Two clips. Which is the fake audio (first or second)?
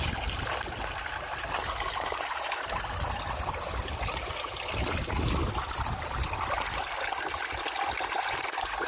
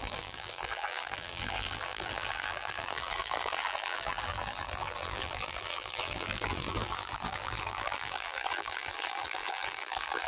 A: second